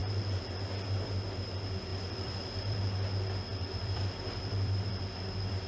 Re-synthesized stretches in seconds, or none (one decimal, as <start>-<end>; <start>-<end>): 1.9-2.8; 3.5-4.9